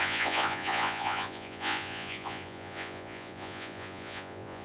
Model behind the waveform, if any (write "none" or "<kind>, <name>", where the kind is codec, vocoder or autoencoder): vocoder, Vocos